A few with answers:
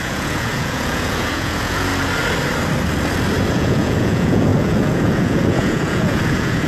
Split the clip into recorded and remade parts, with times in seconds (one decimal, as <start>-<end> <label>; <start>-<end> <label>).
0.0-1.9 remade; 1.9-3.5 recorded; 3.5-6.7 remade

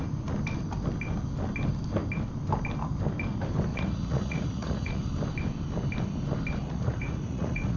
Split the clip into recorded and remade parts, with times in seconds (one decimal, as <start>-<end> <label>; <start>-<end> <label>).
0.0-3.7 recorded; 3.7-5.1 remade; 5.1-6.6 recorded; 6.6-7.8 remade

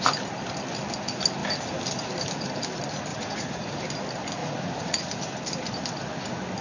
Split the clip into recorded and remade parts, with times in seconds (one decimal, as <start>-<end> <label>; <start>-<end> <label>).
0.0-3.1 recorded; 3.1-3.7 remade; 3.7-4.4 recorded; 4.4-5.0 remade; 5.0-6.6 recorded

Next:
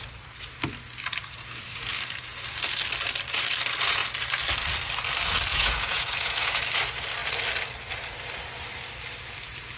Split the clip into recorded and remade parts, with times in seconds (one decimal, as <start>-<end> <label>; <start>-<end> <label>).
0.0-5.5 recorded; 5.5-6.6 remade; 6.6-9.8 recorded

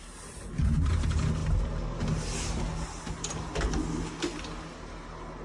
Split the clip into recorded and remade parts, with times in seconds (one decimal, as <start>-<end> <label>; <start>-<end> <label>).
0.0-5.4 recorded